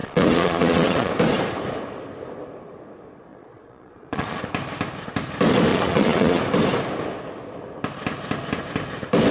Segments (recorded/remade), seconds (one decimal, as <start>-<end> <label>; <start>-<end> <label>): 0.0-1.1 remade; 1.1-3.3 recorded; 3.3-4.4 remade; 4.4-5.7 recorded; 5.7-6.4 remade; 6.4-9.3 recorded